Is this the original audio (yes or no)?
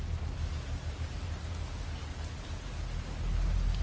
yes